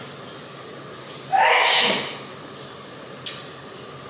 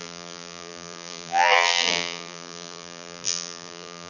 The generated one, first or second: second